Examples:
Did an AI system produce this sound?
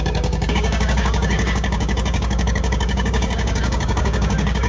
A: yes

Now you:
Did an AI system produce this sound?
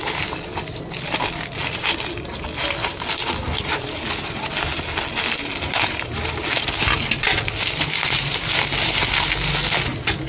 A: no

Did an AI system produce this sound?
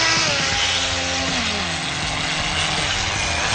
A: no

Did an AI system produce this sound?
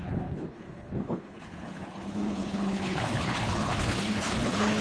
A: yes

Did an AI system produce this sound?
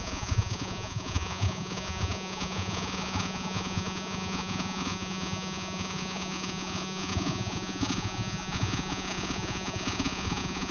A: yes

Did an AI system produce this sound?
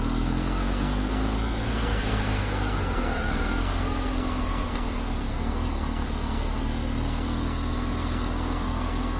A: yes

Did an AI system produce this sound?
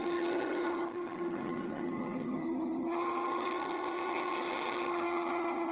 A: yes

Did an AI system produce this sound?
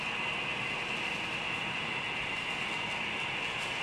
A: no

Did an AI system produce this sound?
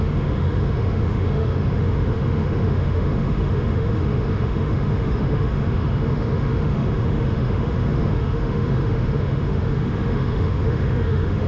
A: yes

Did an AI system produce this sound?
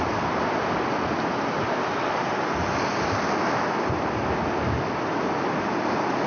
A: no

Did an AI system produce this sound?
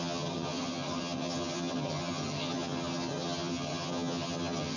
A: yes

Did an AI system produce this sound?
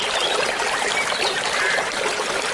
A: no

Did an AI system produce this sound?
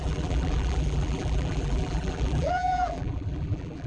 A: yes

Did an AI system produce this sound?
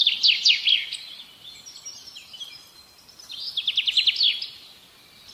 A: no